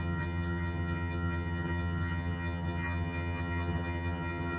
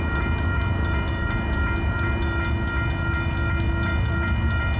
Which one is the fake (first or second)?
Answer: first